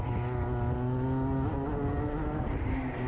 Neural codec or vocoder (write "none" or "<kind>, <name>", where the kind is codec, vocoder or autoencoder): none